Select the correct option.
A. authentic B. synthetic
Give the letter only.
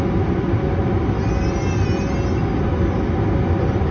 A